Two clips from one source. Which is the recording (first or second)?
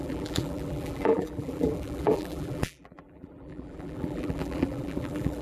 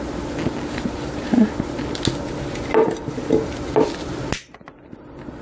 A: second